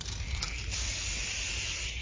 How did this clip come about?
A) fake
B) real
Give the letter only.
B